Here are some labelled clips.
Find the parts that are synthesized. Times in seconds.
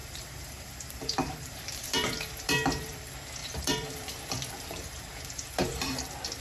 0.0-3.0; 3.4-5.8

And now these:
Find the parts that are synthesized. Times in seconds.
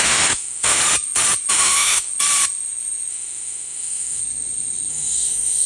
0.0-0.8; 1.5-2.1; 3.1-4.2; 4.9-5.7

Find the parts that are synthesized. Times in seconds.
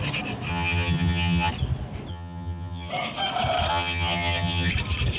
0.5-1.5; 2.1-2.9; 3.7-4.7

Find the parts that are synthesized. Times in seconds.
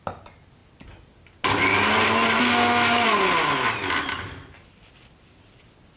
none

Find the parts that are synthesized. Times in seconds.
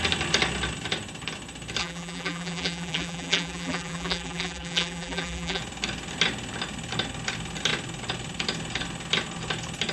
1.8-5.6